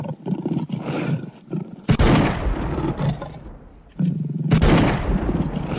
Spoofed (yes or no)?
yes